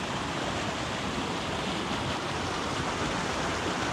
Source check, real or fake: real